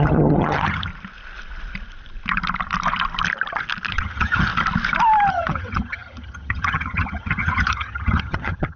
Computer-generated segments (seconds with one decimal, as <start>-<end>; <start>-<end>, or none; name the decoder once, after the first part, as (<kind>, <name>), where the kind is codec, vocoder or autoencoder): 0.0-0.9 (vocoder, HiFi-GAN); 3.9-4.5; 5.3-8.8